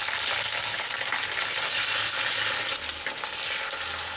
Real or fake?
real